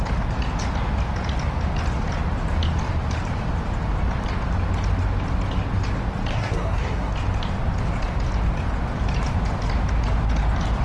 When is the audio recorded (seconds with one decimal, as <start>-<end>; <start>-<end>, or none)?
0.0-6.3; 7.1-10.8